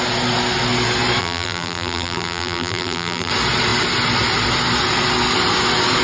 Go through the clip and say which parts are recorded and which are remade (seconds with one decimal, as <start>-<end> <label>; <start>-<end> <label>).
0.0-1.2 recorded; 1.2-3.3 remade; 3.3-6.0 recorded